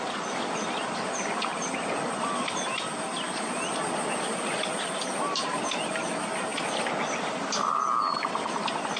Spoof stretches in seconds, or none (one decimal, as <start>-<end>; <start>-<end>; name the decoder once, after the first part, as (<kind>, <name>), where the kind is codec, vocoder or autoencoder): none

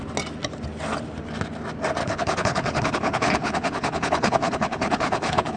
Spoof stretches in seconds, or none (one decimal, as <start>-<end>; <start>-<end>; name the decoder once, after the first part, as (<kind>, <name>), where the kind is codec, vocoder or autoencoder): 2.0-5.6 (codec, HILCodec)